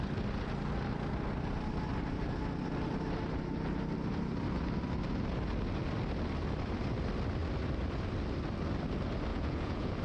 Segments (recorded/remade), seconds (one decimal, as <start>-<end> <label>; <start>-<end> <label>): 0.0-9.3 recorded; 9.3-10.0 remade